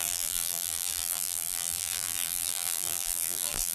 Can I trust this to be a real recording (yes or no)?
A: no